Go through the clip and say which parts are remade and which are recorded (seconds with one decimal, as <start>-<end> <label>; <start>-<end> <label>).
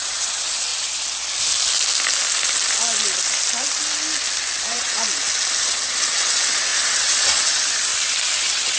0.0-0.7 remade; 0.7-4.6 recorded; 4.6-5.0 remade; 5.0-5.6 recorded; 5.6-7.9 remade; 7.9-8.4 recorded; 8.4-8.8 remade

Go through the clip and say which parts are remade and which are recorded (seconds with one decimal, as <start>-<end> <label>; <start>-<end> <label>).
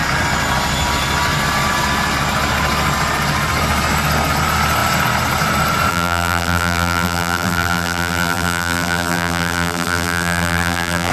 0.0-5.9 recorded; 5.9-11.1 remade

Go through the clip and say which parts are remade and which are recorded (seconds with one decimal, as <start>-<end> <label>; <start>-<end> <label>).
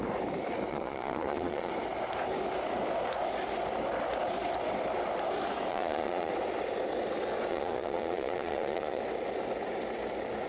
0.0-0.7 recorded; 0.7-1.7 remade; 1.7-5.7 recorded; 5.7-6.3 remade; 6.3-7.5 recorded; 7.5-9.0 remade; 9.0-10.5 recorded